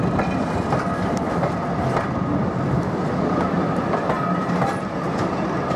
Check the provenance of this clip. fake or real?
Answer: real